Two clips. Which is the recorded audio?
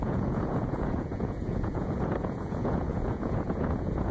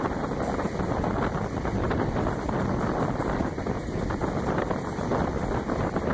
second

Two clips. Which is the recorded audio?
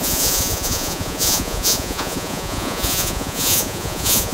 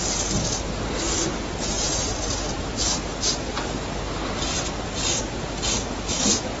second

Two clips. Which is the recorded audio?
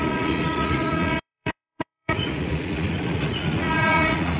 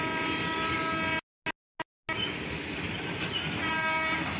second